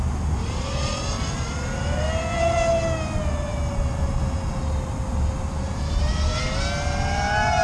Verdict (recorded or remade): recorded